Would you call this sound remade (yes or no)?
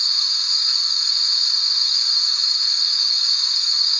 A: yes